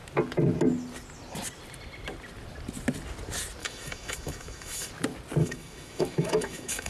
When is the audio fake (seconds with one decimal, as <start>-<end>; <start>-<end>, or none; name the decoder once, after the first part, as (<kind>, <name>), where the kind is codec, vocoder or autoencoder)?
3.6-4.9 (autoencoder, DAC-VAE); 5.4-6.9